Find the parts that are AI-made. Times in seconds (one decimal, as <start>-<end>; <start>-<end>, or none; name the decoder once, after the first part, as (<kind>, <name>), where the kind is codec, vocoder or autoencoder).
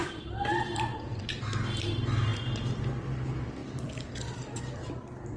0.0-1.2 (vocoder, BigVGAN v2); 3.6-4.6